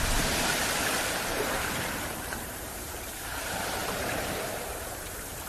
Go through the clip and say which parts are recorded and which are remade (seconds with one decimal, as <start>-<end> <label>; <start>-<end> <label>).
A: 0.0-5.5 remade